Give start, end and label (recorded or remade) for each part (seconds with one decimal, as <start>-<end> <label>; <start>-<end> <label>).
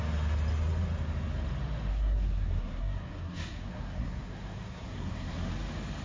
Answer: 0.0-1.9 recorded; 1.9-5.5 remade; 5.5-6.0 recorded